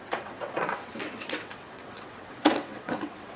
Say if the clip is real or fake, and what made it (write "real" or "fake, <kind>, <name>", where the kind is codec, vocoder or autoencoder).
fake, vocoder, WaveNeXt